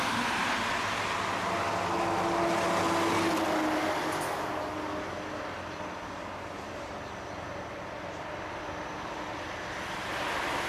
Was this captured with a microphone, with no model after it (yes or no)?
yes